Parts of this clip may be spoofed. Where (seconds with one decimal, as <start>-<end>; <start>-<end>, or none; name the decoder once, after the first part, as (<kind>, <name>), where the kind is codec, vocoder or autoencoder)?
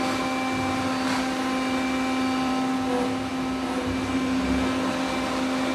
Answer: none